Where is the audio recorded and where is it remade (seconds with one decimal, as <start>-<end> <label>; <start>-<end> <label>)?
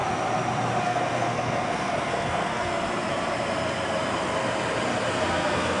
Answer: 0.0-0.8 recorded; 0.8-2.7 remade; 2.7-5.1 recorded; 5.1-5.8 remade